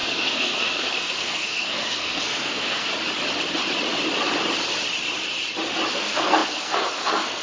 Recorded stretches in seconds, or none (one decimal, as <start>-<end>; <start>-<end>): 2.9-5.9